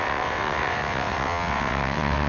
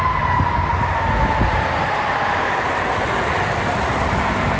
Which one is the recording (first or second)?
second